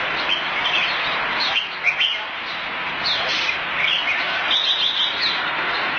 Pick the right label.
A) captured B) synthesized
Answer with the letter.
A